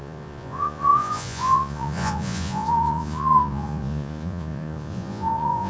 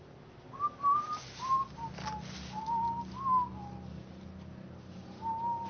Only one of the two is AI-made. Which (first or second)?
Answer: first